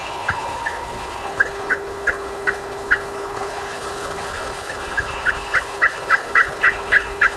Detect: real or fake fake